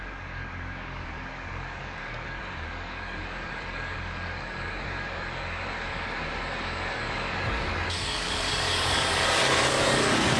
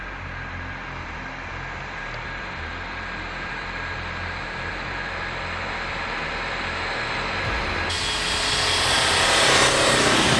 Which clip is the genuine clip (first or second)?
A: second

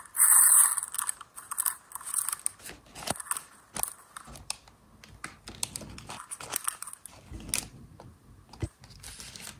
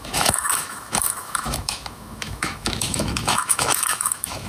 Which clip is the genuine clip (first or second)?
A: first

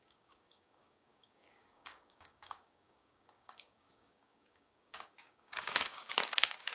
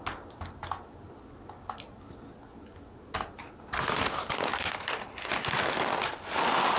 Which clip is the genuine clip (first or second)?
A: second